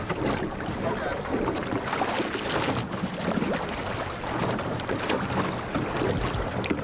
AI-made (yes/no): no